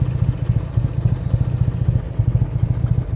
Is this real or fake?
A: real